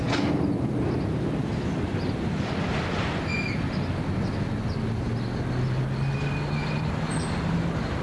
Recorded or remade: recorded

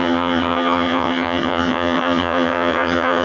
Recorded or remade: remade